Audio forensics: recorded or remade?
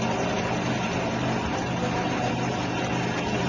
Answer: recorded